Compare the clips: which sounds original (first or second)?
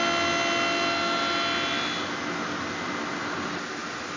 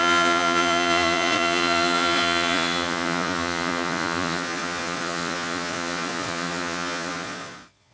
first